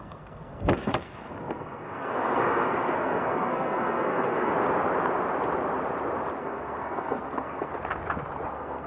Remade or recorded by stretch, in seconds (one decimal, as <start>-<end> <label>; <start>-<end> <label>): 0.0-4.5 remade; 4.5-6.4 recorded; 6.4-7.7 remade; 7.7-8.5 recorded; 8.5-8.9 remade